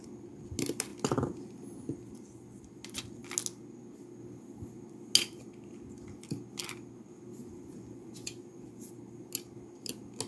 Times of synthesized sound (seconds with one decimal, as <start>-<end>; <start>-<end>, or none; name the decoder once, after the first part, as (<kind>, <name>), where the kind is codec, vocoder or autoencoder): 7.4-8.9 (vocoder, Vocos)